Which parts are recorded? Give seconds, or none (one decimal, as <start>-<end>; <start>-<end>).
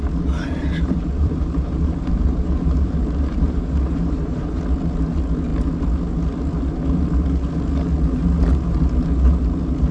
0.0-0.7; 4.6-9.9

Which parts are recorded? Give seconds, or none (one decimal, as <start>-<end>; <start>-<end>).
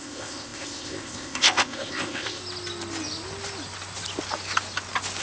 2.4-5.2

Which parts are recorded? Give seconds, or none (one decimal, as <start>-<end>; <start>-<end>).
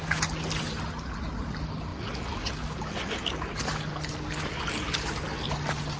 0.0-6.0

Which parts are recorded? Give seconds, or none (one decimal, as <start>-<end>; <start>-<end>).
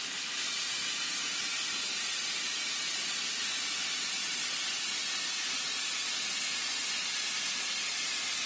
0.0-8.5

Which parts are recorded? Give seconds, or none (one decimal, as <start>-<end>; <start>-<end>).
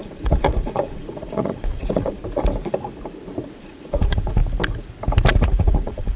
2.2-3.6; 4.4-5.4